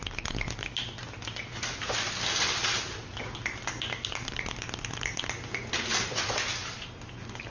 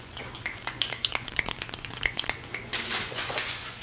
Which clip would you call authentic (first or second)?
first